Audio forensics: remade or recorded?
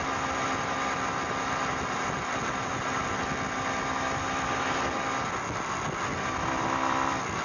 recorded